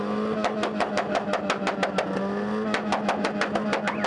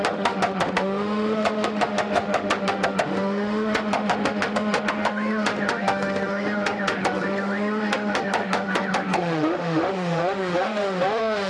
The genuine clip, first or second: first